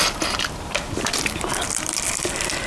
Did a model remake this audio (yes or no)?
no